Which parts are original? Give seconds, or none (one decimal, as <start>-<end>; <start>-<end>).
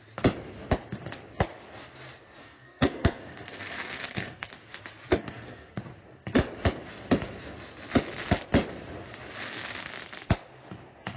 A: 0.0-2.4; 4.5-5.1; 5.8-11.2